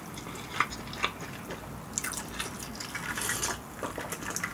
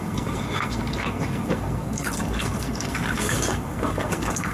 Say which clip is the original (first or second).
first